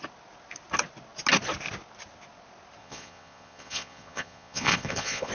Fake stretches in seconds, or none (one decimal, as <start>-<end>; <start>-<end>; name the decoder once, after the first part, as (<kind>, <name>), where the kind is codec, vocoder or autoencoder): 2.8-5.3 (vocoder, Vocos)